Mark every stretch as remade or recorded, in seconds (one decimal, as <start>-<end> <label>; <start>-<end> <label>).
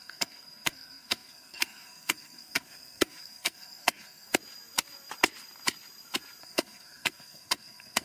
0.0-4.3 remade; 4.3-6.4 recorded; 6.4-8.0 remade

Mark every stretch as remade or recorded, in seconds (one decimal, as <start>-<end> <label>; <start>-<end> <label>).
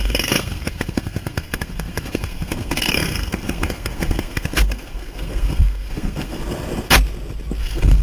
0.0-6.4 remade; 6.4-7.6 recorded; 7.6-8.0 remade